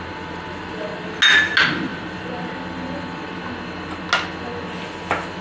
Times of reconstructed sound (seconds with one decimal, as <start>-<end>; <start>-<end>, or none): none